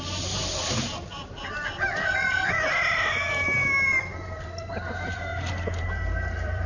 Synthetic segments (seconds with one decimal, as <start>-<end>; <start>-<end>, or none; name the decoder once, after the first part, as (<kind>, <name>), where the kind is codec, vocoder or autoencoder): 0.0-5.3 (vocoder, BigVGAN v2); 5.8-6.7